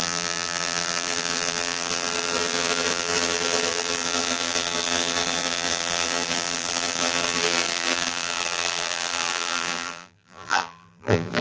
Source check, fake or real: fake